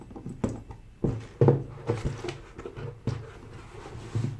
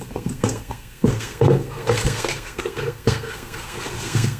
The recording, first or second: first